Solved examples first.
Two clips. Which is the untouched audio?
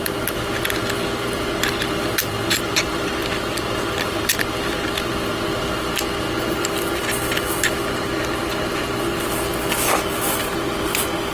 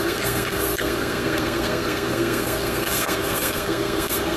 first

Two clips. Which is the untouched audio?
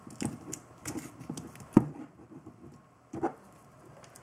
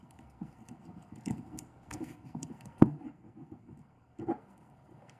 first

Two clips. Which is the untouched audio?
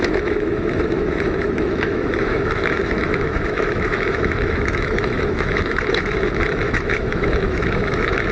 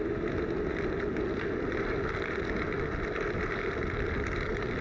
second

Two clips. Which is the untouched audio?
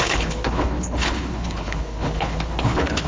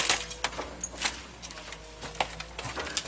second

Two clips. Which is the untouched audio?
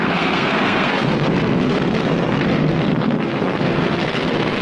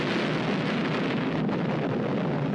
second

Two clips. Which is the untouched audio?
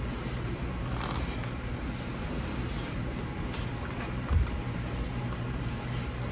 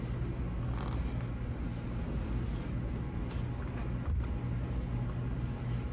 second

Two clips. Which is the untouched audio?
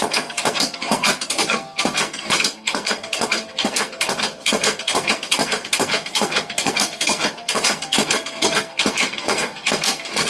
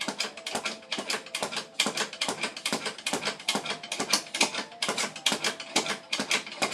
second